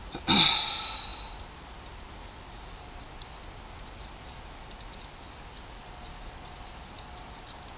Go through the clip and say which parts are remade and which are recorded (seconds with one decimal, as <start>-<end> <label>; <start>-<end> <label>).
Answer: 0.0-7.8 recorded